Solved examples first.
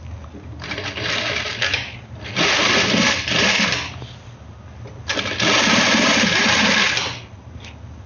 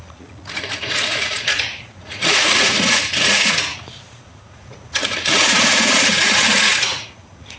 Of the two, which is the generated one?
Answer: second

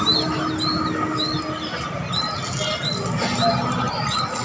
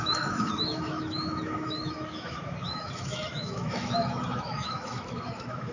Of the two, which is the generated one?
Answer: second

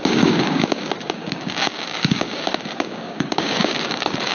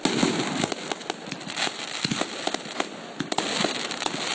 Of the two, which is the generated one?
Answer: first